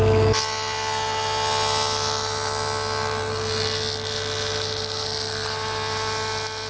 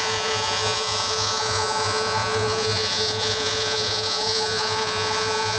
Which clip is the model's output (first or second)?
second